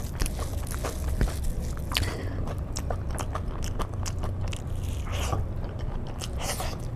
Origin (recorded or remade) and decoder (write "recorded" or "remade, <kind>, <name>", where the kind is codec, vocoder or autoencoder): recorded